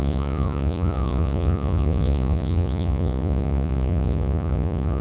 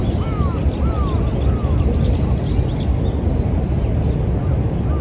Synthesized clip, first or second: first